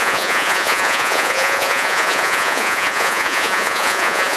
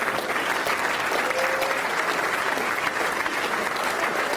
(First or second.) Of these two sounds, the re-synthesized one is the first